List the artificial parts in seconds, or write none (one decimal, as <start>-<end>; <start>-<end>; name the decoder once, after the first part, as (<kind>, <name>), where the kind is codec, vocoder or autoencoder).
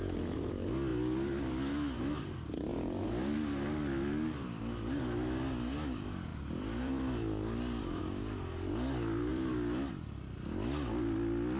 6.3-8.0 (vocoder, BigVGAN v2); 9.3-9.9